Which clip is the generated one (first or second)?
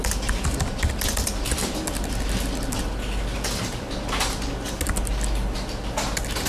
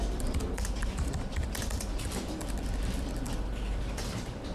second